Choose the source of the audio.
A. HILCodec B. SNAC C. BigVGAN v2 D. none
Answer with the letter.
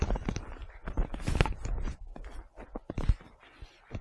D